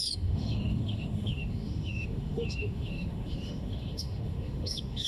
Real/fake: fake